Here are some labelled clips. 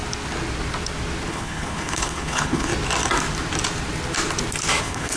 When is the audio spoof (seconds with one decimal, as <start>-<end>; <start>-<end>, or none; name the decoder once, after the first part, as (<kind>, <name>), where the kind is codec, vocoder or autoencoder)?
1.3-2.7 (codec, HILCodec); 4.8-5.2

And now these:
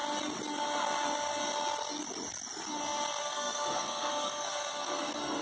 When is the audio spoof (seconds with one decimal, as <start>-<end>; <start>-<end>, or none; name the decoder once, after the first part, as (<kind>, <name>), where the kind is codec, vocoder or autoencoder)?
3.2-5.4 (codec, SNAC)

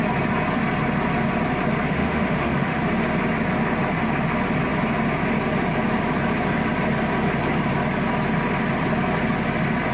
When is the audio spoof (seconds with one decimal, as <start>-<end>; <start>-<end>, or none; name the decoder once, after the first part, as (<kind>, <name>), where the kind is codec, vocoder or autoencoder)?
1.9-2.8 (autoencoder, DAC-VAE)

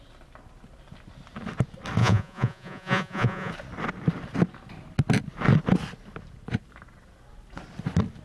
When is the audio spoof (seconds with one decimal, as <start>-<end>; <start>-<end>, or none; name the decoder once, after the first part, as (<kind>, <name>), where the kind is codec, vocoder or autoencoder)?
2.0-3.5 (vocoder, Vocos)

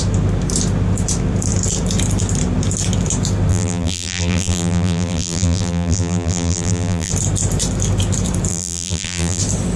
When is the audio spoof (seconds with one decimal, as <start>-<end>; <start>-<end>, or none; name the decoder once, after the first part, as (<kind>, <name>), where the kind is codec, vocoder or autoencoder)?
3.5-7.1 (vocoder, BigVGAN v2); 8.5-9.4

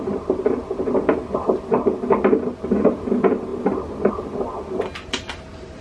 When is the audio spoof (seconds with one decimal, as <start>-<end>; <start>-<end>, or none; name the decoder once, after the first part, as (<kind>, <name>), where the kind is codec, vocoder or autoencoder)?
none

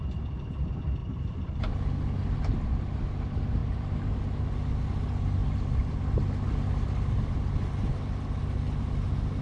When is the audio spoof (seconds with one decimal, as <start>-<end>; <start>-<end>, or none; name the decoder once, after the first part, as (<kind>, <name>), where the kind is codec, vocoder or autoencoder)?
1.0-1.6 (vocoder, BigVGAN v2); 3.6-4.1; 5.4-6.0